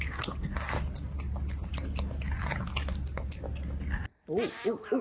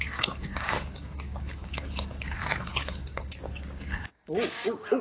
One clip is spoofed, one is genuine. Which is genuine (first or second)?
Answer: first